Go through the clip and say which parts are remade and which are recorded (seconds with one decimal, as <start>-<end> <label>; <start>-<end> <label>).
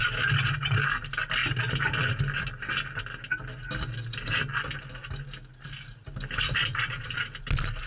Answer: 0.0-1.4 recorded; 1.4-2.7 remade; 2.7-6.0 recorded; 6.0-7.2 remade; 7.2-7.9 recorded